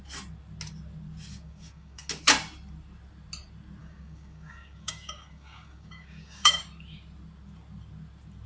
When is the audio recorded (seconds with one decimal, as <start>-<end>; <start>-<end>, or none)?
0.0-1.3; 2.1-3.8; 6.6-8.5